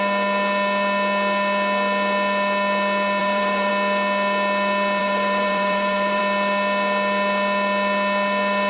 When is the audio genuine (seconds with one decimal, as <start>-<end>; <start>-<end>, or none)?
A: 0.0-3.2; 3.7-5.0; 6.2-8.7